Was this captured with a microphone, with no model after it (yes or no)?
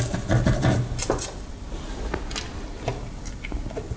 yes